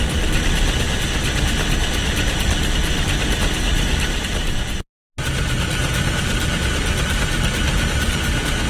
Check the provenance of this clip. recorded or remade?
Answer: recorded